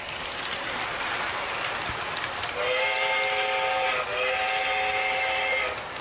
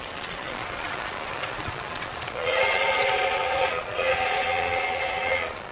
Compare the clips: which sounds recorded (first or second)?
first